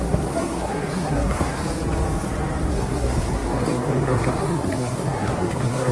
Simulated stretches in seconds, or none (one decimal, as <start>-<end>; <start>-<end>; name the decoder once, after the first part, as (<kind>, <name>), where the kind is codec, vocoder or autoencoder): 0.0-1.6 (codec, SNAC); 2.7-5.9